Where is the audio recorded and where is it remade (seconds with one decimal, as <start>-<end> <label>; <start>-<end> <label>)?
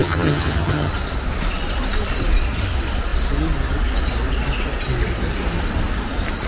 0.0-0.9 remade; 0.9-6.5 recorded